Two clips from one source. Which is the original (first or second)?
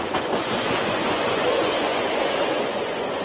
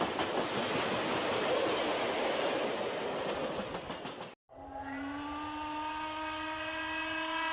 second